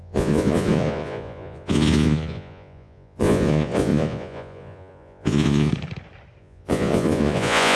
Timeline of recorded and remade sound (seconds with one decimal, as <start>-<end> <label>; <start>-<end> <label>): 0.0-5.7 remade; 5.7-6.4 recorded; 6.4-7.8 remade

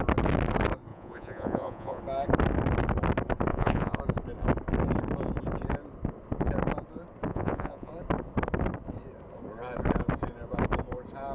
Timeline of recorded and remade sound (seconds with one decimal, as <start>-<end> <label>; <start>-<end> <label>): 0.0-0.9 recorded; 0.9-2.0 remade; 2.0-3.5 recorded; 3.5-4.0 remade; 4.0-7.3 recorded; 7.3-7.9 remade; 7.9-11.3 recorded

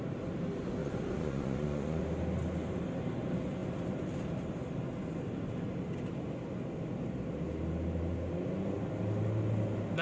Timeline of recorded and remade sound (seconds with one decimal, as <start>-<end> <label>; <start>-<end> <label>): 0.0-0.8 recorded; 0.8-2.0 remade; 2.0-10.0 recorded

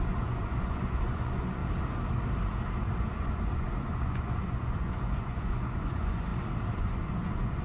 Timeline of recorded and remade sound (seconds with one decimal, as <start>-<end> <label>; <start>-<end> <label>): 0.0-1.6 remade; 1.6-3.0 recorded; 3.0-6.3 remade; 6.3-6.8 recorded; 6.8-7.6 remade